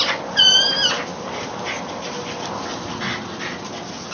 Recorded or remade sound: recorded